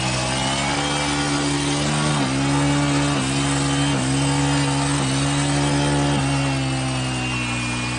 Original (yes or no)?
yes